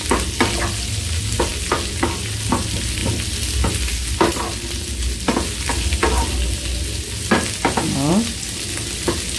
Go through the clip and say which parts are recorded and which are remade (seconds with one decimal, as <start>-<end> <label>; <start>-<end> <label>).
0.0-9.4 recorded